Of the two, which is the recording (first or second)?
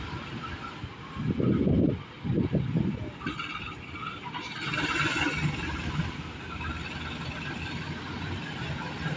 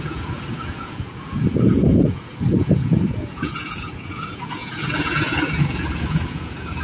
first